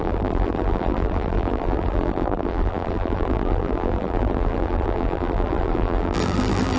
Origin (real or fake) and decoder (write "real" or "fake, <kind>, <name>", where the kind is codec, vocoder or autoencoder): fake, vocoder, BigVGAN v2